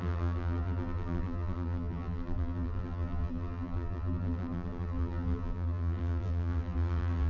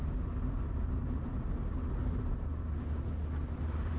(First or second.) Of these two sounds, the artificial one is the first